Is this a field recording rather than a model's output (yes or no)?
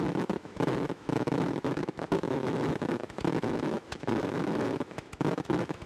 no